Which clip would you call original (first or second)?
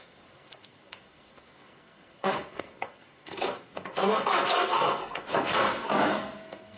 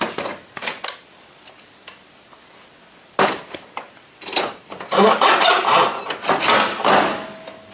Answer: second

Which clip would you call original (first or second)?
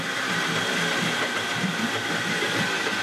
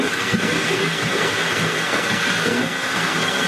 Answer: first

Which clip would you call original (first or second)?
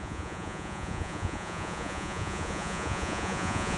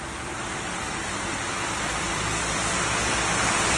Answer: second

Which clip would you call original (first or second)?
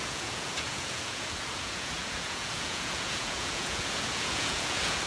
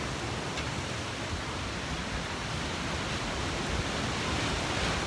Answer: second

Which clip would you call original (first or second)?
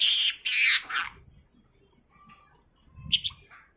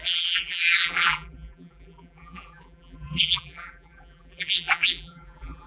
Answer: first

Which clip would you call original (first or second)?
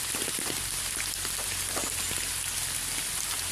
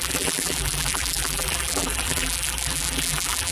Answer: first